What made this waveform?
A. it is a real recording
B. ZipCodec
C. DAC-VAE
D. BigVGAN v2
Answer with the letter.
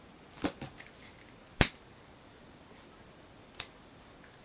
A